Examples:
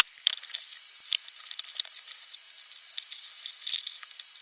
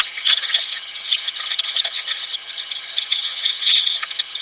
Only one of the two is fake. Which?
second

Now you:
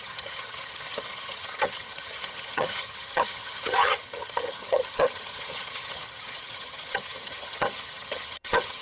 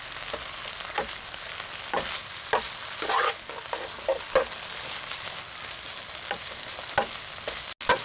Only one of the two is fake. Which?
first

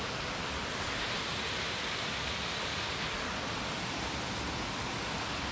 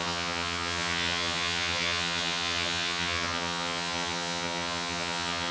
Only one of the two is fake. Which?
second